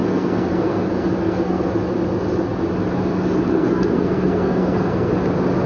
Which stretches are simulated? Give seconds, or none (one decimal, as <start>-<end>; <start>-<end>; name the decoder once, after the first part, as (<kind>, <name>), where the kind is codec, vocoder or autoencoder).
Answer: 0.0-1.7 (codec, SNAC); 3.5-5.1